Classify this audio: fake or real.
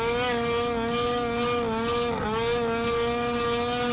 real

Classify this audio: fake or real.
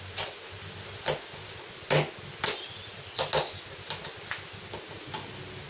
real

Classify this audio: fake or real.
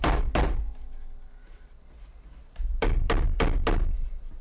real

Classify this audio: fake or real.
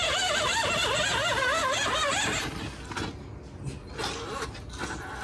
real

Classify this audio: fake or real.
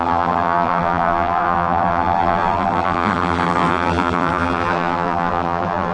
fake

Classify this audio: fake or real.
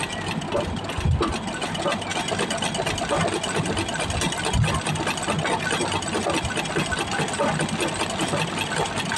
real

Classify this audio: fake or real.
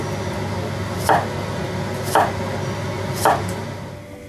real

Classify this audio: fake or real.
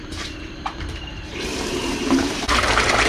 fake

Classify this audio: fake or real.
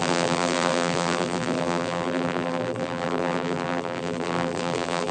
fake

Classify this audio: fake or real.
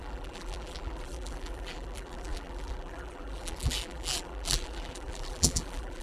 fake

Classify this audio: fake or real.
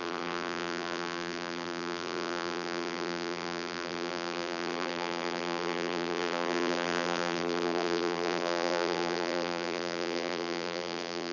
fake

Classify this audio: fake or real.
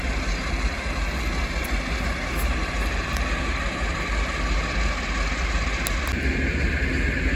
real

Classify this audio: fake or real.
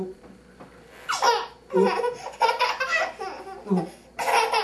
real